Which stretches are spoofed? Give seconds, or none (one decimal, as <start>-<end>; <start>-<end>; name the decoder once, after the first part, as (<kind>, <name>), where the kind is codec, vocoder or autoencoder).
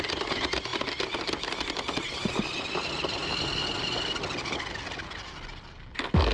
none